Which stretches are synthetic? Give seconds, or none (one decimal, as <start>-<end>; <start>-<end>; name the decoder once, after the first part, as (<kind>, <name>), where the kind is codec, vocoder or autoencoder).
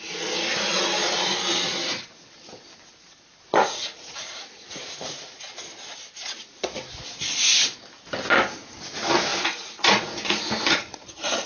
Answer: 3.6-5.4 (vocoder, Vocos); 9.3-11.5